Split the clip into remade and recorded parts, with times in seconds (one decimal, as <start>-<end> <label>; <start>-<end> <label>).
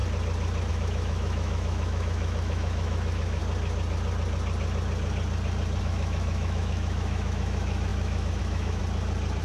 0.0-0.7 recorded; 0.7-3.4 remade; 3.4-5.8 recorded; 5.8-8.8 remade; 8.8-9.4 recorded